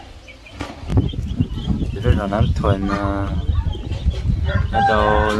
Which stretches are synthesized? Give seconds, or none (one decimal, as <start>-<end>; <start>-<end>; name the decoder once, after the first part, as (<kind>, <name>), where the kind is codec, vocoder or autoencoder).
none